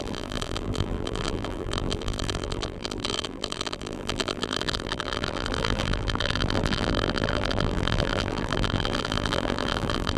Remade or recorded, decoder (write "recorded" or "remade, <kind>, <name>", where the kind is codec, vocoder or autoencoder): remade, vocoder, BigVGAN v2